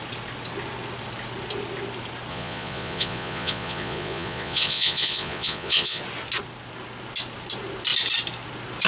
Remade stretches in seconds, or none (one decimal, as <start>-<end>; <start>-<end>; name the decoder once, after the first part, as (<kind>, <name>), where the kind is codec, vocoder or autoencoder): 2.3-6.0 (vocoder, Vocos)